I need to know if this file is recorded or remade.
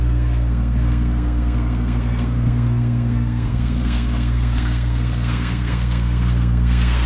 remade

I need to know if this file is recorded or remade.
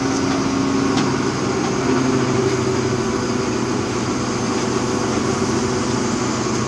recorded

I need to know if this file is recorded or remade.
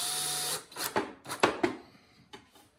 recorded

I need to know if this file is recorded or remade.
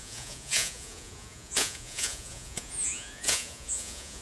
remade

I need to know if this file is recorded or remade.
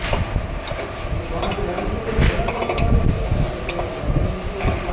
recorded